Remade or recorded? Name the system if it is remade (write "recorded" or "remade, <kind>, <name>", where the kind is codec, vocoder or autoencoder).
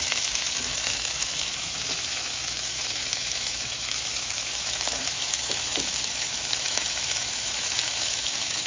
remade, autoencoder, DAC-VAE